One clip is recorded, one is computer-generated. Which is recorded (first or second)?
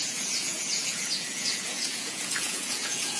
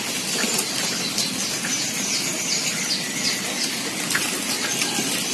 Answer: second